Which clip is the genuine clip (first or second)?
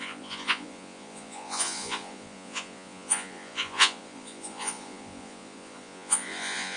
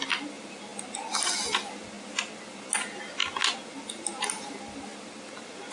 second